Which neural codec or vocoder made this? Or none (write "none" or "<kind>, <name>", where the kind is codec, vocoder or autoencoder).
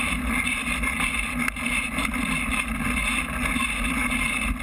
none